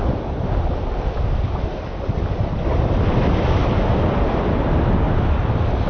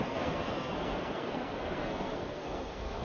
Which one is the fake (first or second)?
second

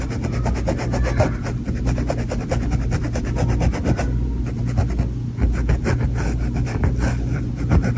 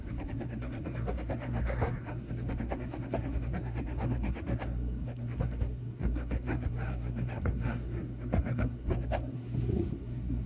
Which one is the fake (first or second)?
second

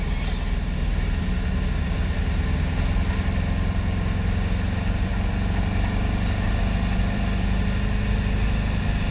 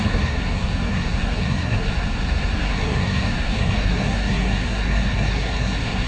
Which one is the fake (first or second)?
second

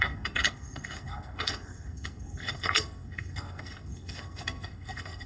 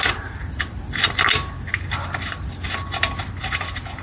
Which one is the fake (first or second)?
first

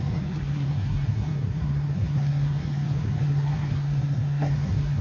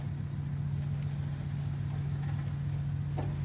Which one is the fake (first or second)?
first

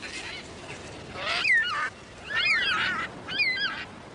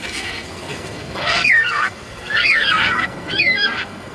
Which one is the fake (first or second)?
second